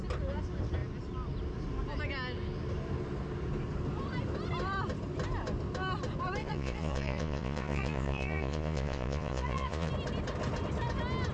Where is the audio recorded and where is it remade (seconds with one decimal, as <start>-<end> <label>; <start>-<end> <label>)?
0.0-6.4 recorded; 6.4-9.9 remade; 9.9-11.3 recorded